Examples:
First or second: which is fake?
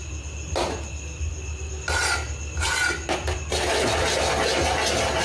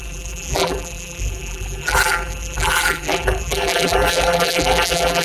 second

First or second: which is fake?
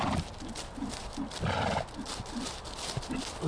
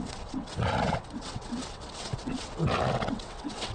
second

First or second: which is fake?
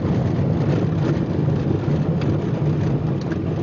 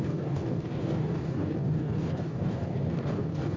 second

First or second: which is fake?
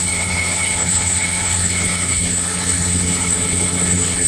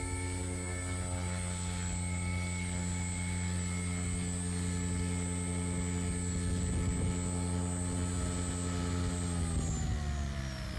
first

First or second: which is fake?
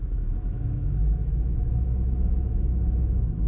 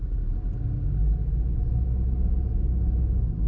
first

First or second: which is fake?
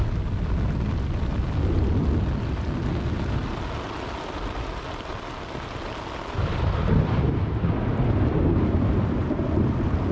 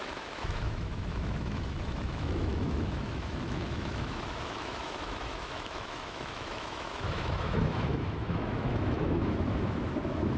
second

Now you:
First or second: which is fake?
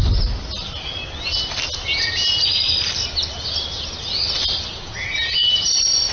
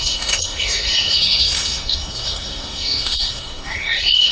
second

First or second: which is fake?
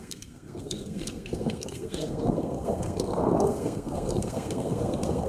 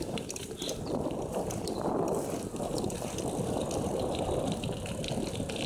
first